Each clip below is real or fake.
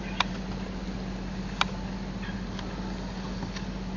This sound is real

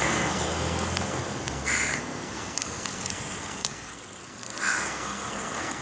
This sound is fake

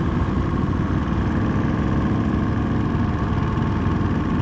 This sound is real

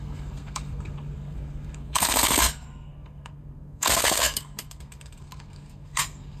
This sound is fake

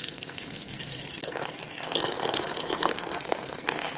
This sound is fake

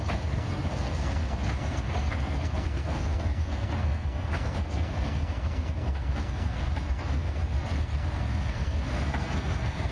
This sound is fake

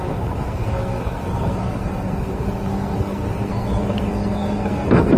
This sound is fake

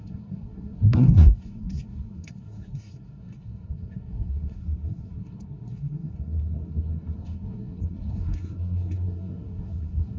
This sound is fake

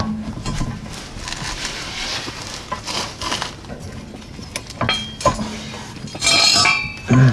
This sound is real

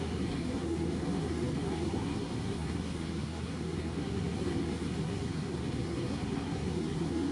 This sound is fake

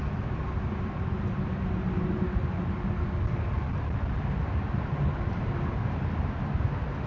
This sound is real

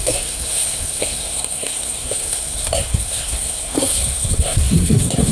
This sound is fake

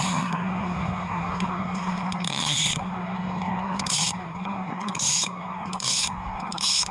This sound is fake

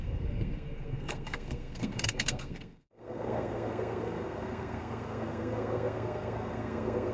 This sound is fake